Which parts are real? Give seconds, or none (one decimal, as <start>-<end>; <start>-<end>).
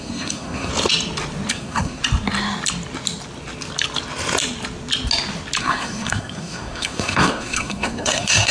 0.7-1.5; 2.0-5.6